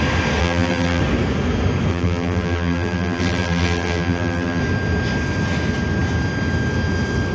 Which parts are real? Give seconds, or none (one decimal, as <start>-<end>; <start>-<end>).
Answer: 0.0-0.4; 1.0-1.9; 4.6-7.3